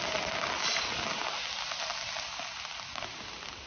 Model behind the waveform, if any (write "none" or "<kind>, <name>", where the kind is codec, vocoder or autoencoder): none